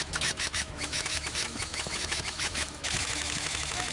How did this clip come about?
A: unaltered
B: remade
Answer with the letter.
B